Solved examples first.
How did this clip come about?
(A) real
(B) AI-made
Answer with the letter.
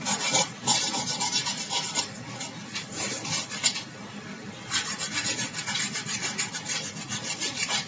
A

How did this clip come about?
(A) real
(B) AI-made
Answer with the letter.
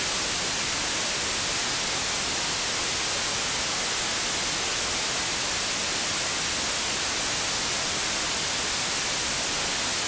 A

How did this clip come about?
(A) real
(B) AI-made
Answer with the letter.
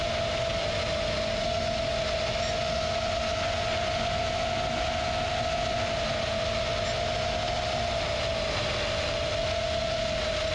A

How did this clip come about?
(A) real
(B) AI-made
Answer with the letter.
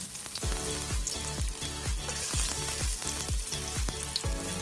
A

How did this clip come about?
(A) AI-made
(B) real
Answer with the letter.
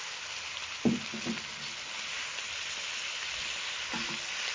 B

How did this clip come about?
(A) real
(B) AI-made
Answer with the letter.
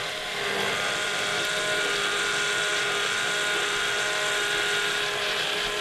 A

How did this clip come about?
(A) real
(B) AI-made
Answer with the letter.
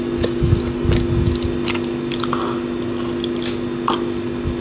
A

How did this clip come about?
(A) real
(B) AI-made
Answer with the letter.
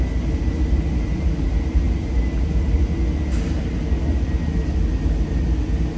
A